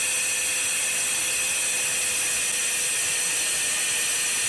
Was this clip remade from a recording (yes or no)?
no